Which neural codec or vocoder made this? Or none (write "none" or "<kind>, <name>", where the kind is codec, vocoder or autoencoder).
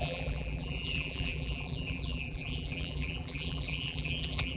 vocoder, BigVGAN v2